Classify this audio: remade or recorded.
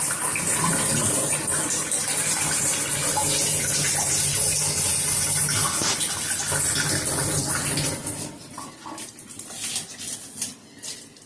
recorded